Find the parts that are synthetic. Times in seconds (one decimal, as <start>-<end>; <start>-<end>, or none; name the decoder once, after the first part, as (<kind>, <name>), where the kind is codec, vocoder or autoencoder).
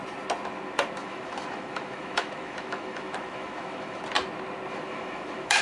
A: 1.0-4.0 (autoencoder, DAC-VAE); 4.7-5.6